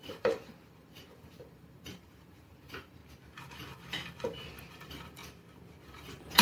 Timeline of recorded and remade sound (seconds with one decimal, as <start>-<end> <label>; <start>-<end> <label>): 0.0-3.0 remade; 3.0-4.7 recorded; 4.7-5.2 remade; 5.2-5.8 recorded; 5.8-6.4 remade